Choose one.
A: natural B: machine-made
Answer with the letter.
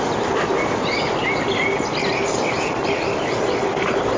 A